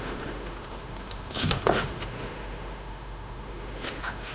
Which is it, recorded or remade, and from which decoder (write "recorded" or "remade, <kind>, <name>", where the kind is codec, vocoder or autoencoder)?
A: remade, autoencoder, DAC-VAE